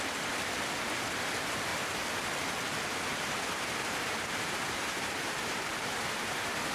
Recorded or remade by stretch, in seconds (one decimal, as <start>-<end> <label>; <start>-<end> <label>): 0.0-3.8 recorded; 3.8-6.7 remade